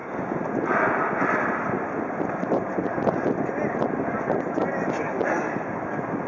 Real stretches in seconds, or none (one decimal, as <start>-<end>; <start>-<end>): 0.0-6.3